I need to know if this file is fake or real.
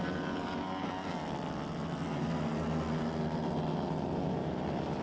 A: real